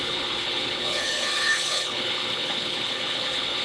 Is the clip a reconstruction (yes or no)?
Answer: yes